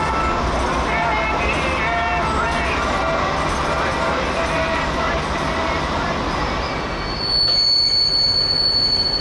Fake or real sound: real